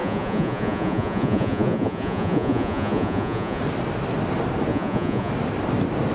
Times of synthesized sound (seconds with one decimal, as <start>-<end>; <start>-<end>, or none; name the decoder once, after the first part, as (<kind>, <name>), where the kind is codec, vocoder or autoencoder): 0.0-3.6 (vocoder, Vocos); 4.7-5.3